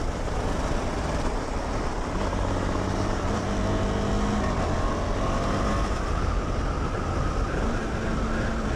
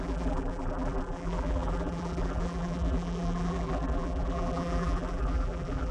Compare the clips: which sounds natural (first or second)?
first